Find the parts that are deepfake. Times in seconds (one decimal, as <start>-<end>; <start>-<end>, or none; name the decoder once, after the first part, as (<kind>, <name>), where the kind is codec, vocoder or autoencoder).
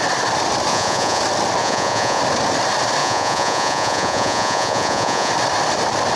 0.7-1.2 (vocoder, Vocos); 1.6-2.2; 3.0-5.3